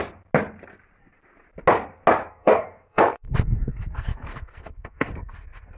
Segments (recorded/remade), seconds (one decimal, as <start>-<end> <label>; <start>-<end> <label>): 0.0-2.2 recorded; 2.2-5.8 remade

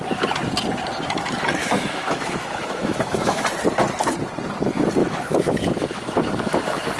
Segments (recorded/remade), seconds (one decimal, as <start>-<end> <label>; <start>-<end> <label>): 0.0-1.6 recorded; 1.6-3.4 remade; 3.4-5.0 recorded; 5.0-6.1 remade; 6.1-7.0 recorded

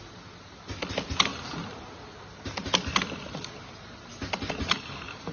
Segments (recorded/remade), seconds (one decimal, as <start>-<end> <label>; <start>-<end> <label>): 0.0-5.3 recorded

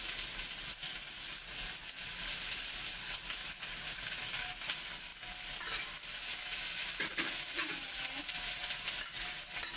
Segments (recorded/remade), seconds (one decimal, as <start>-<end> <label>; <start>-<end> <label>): 0.0-9.8 recorded